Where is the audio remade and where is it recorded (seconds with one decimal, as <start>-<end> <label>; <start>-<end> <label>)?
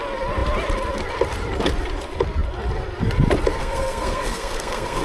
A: 0.0-3.6 recorded; 3.6-5.0 remade